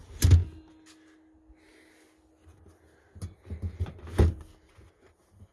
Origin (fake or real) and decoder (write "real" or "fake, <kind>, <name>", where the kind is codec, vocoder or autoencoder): real